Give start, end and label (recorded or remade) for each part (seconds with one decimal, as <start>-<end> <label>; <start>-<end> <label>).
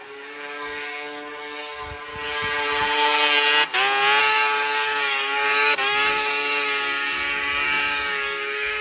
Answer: 0.0-2.1 remade; 2.1-4.2 recorded; 4.2-8.8 remade